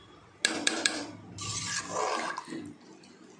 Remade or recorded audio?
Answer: recorded